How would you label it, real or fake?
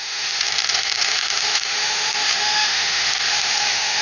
fake